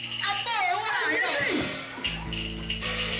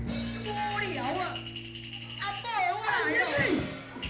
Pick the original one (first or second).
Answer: second